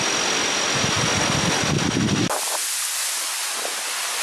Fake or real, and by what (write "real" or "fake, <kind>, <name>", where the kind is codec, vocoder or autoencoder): real